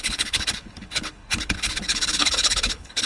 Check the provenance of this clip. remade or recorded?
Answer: remade